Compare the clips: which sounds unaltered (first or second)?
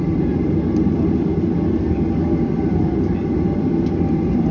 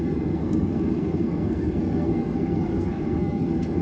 first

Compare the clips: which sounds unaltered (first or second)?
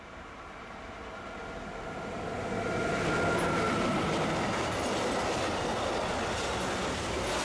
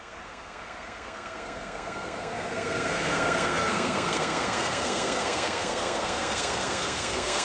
first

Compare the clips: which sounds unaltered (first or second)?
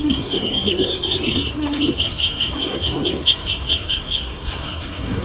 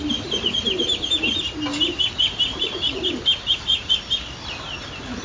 second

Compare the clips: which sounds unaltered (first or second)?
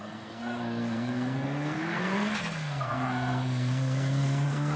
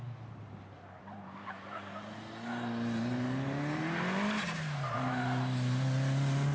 second